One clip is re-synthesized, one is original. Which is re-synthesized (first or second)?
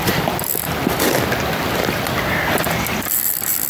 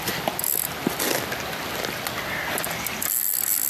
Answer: first